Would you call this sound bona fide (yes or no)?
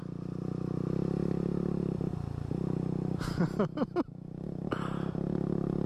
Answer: yes